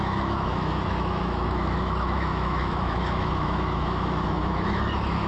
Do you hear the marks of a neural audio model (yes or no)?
yes